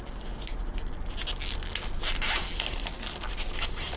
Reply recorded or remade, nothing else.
recorded